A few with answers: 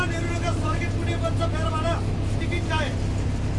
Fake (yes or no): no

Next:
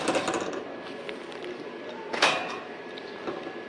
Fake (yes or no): no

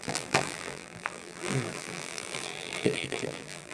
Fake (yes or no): yes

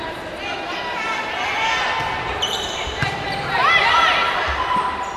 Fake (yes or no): yes